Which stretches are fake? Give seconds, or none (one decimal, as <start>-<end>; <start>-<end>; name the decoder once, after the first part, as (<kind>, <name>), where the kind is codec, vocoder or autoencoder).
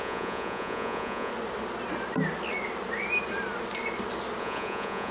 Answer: 0.0-1.3 (vocoder, Vocos); 4.4-5.1